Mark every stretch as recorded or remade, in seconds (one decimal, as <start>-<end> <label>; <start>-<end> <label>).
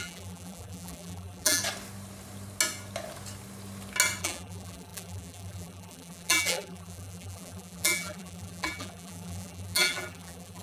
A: 0.0-1.6 remade; 1.6-4.2 recorded; 4.2-10.6 remade